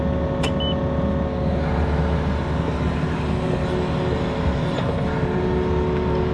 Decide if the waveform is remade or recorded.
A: recorded